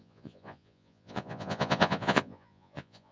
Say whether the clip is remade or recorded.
remade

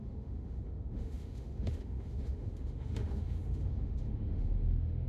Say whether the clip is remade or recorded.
remade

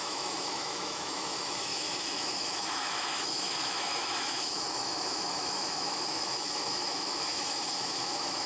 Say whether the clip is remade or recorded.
remade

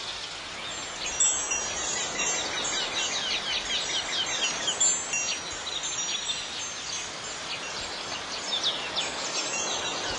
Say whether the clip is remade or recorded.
recorded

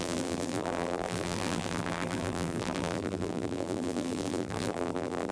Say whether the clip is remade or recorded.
remade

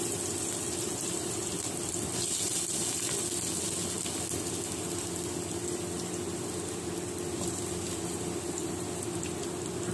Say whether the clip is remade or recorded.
recorded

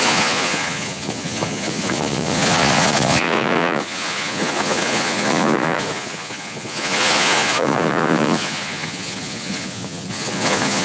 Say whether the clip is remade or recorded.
remade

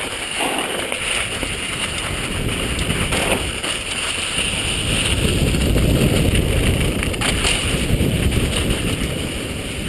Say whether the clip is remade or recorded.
remade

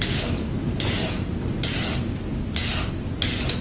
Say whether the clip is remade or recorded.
recorded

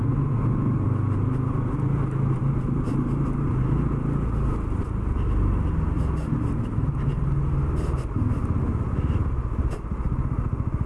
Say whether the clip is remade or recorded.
recorded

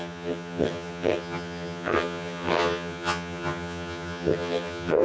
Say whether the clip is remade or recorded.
remade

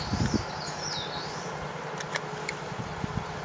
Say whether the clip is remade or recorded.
recorded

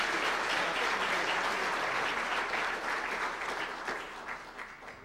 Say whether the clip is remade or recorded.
recorded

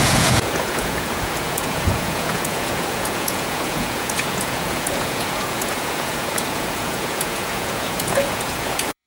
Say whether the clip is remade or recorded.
remade